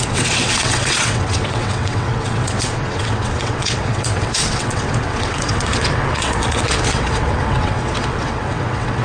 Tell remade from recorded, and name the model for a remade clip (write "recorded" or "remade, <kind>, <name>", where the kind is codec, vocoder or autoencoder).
remade, vocoder, WaveNeXt